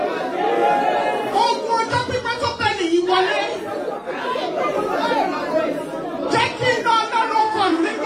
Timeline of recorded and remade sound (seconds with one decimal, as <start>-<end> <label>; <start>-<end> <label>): 0.0-7.4 recorded; 7.4-8.1 remade